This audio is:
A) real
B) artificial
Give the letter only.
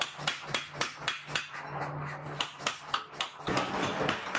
A